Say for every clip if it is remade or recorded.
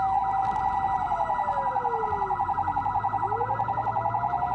recorded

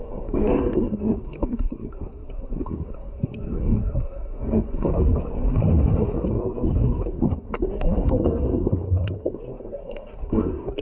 remade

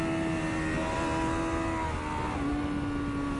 recorded